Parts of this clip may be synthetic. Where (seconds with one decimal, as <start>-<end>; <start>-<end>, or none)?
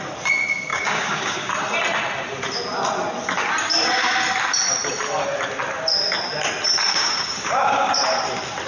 0.7-1.5; 6.9-7.9